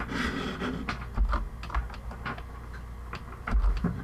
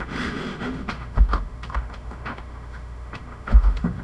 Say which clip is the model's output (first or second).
second